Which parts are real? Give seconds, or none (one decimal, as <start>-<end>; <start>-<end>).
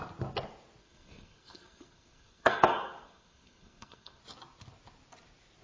0.0-0.8; 4.2-5.6